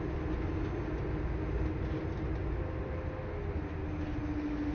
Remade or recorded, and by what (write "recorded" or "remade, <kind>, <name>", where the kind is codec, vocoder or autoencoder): recorded